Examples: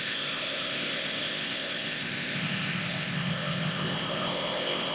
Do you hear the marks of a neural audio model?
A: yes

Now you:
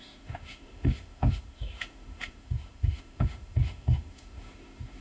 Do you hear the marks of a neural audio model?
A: yes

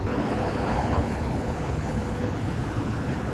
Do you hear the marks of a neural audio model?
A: yes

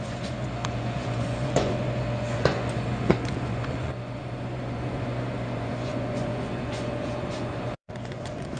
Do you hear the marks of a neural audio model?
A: yes